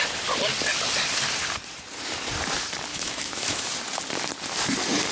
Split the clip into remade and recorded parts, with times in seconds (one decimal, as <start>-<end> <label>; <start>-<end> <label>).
0.0-2.9 recorded; 2.9-3.7 remade; 3.7-5.1 recorded